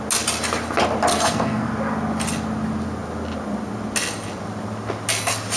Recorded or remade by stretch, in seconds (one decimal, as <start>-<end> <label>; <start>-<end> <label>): 0.0-1.1 recorded; 1.1-1.7 remade; 1.7-5.6 recorded